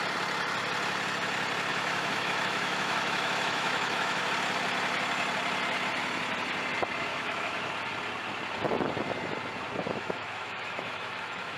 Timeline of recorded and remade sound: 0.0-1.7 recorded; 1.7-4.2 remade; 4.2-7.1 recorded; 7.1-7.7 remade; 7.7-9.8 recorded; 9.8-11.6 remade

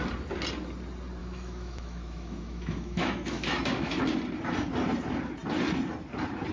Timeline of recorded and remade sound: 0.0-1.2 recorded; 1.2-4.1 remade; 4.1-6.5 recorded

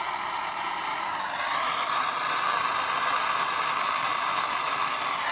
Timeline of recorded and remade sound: 0.0-0.9 recorded; 0.9-4.1 remade; 4.1-5.3 recorded

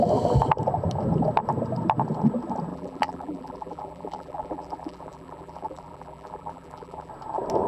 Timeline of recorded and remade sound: 0.0-2.7 recorded; 2.7-7.1 remade; 7.1-7.7 recorded

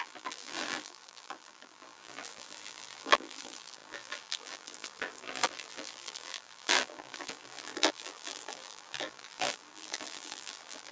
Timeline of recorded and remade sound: 0.0-10.9 remade

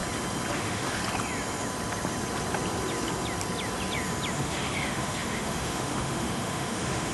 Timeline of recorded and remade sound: 0.0-0.5 recorded; 0.5-1.0 remade; 1.0-4.3 recorded; 4.3-7.1 remade

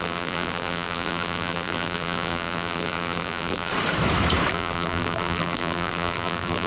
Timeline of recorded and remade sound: 0.0-3.7 remade; 3.7-4.5 recorded; 4.5-6.7 remade

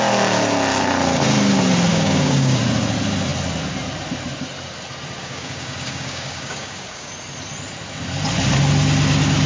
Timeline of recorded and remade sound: 0.0-1.9 recorded; 1.9-2.6 remade; 2.6-5.2 recorded; 5.2-7.1 remade; 7.1-9.5 recorded